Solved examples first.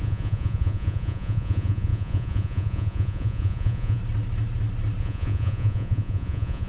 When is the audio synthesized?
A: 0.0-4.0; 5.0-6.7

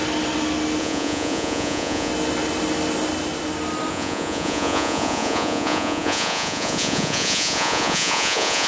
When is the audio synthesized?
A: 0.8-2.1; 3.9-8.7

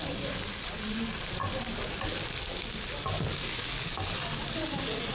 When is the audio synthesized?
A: none

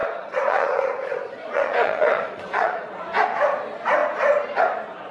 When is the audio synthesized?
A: 0.0-3.0

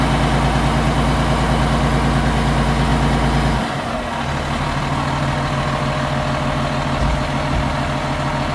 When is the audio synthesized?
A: none